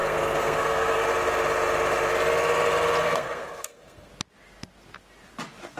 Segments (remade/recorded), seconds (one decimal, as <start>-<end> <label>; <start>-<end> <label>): 0.0-1.0 remade; 1.0-3.0 recorded; 3.0-4.1 remade; 4.1-5.8 recorded